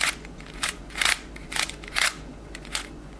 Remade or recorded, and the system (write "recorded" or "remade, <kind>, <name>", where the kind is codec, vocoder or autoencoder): remade, vocoder, Vocos